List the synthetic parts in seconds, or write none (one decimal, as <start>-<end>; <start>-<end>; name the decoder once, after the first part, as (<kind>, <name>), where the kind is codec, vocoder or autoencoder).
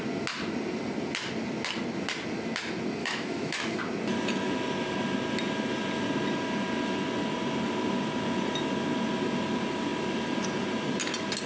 3.0-3.8 (autoencoder, DAC-VAE)